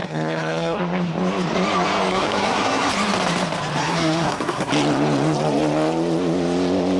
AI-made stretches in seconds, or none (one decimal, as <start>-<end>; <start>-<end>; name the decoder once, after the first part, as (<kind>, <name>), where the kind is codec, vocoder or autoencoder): 0.0-0.8 (codec, SNAC); 2.1-2.9; 3.8-4.7